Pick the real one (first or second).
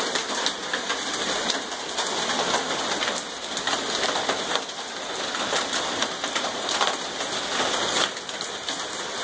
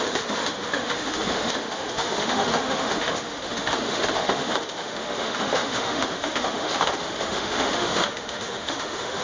first